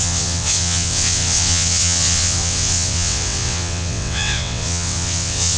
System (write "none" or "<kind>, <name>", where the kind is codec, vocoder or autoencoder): vocoder, WaveNeXt